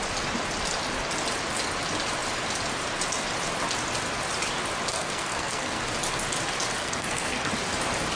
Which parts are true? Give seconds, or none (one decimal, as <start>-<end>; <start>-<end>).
0.0-4.9; 5.8-6.8; 7.5-8.2